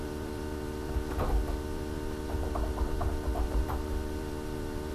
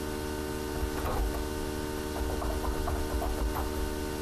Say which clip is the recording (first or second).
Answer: second